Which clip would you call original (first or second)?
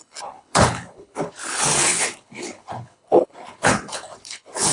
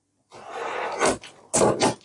second